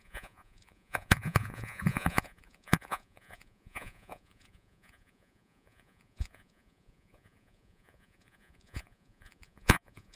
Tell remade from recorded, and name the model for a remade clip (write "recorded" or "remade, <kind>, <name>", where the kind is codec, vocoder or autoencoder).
remade, vocoder, Vocos